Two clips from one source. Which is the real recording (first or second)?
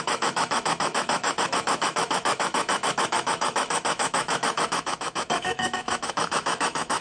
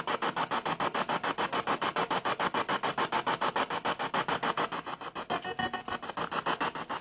second